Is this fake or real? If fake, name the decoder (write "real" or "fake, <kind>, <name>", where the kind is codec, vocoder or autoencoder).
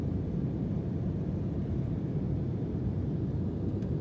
fake, vocoder, BigVGAN v2